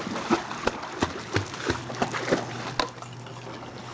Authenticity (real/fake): real